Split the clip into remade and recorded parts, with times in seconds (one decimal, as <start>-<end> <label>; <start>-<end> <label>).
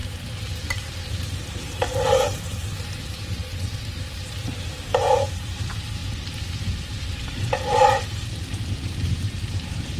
0.0-3.4 remade; 3.4-4.3 recorded; 4.3-10.0 remade